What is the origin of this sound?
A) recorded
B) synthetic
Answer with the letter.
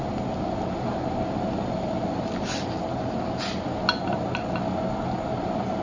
A